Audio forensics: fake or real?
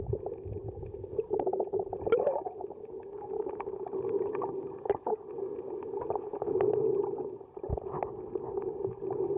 real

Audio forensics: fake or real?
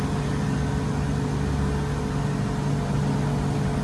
real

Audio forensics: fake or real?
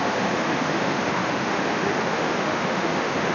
fake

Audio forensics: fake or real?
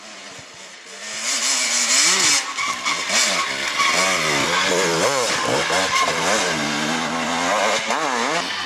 real